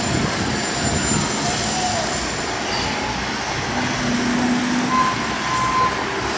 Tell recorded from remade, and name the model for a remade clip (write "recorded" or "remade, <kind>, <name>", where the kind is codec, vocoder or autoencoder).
recorded